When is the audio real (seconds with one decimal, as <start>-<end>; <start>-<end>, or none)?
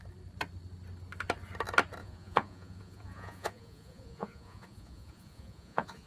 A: 0.0-2.0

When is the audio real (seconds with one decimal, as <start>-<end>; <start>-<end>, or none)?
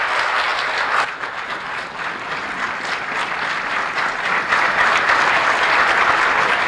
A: 0.0-6.7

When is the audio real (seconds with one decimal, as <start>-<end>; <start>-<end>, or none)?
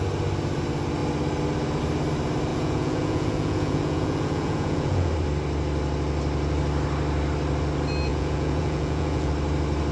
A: 0.0-2.5; 5.1-8.1; 9.3-9.9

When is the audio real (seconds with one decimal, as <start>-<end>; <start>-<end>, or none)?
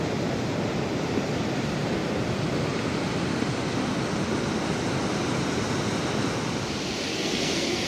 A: 0.0-7.1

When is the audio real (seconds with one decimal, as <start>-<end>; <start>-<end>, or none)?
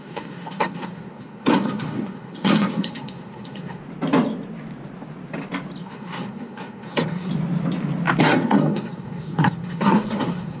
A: 3.8-5.8; 7.3-8.2